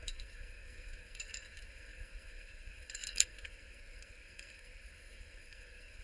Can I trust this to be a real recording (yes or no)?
no